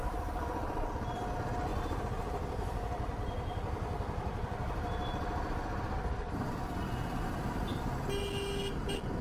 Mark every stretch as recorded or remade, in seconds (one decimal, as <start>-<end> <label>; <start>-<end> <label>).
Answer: 0.0-9.2 recorded